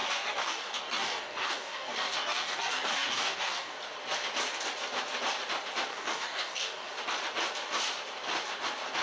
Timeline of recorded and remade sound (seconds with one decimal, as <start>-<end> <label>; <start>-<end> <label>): 0.0-3.7 remade; 3.7-5.9 recorded; 5.9-6.9 remade; 6.9-9.0 recorded